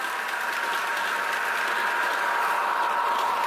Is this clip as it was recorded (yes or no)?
yes